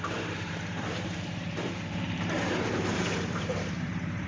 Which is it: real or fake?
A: fake